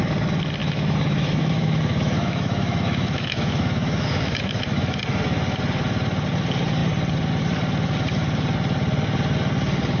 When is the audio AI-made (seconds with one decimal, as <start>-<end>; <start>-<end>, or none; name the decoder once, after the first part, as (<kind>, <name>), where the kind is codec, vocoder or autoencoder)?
0.6-5.0 (autoencoder, DAC-VAE)